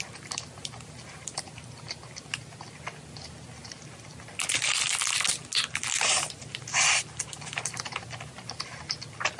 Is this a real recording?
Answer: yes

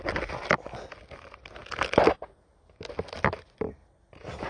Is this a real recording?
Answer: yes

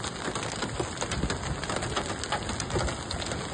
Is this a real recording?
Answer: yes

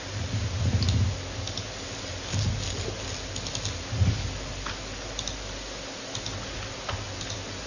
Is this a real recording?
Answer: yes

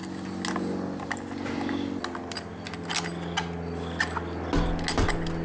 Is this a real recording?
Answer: yes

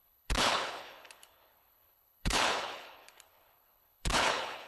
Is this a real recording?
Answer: no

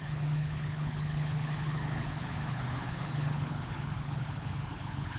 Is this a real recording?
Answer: no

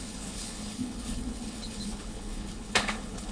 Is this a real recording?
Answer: no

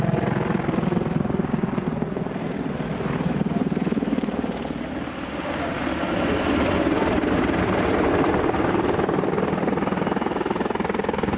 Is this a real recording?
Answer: yes